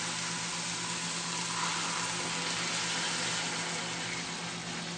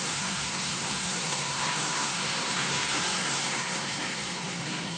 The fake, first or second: second